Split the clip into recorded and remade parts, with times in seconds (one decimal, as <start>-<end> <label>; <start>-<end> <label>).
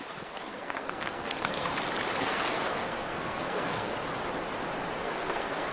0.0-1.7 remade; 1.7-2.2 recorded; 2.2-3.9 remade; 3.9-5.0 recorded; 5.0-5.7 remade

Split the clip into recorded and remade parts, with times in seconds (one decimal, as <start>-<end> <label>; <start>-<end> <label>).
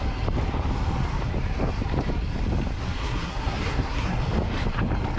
0.0-3.0 recorded; 3.0-4.2 remade; 4.2-5.2 recorded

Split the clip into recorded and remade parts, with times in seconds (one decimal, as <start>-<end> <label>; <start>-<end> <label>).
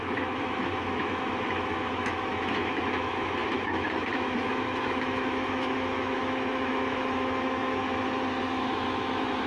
0.0-7.8 remade; 7.8-8.4 recorded; 8.4-9.5 remade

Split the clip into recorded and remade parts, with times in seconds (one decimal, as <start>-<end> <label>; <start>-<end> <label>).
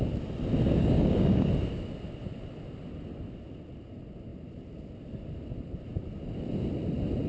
0.0-0.7 recorded; 0.7-1.5 remade; 1.5-7.3 recorded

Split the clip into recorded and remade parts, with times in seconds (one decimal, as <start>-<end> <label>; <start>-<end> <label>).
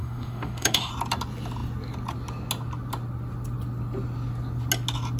0.0-0.9 remade; 0.9-5.2 recorded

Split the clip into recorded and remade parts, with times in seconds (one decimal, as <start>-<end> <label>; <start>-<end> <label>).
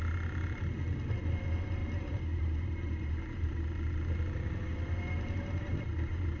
0.0-1.8 recorded; 1.8-3.5 remade; 3.5-4.7 recorded; 4.7-6.4 remade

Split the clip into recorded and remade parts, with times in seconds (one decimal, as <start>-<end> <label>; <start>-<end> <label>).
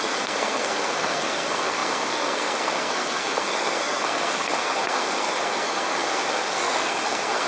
0.0-7.5 remade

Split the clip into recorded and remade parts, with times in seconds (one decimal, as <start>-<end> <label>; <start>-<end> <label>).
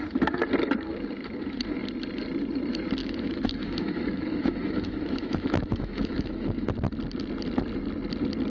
0.0-3.0 recorded; 3.0-6.7 remade; 6.7-8.5 recorded